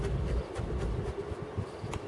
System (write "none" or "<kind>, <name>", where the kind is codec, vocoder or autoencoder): vocoder, BigVGAN v2